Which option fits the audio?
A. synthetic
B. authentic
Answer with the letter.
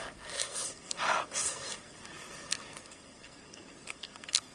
A